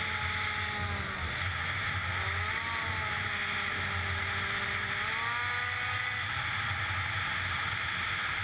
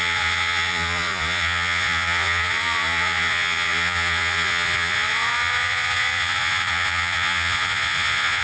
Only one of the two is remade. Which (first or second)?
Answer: second